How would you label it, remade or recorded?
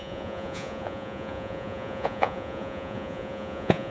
remade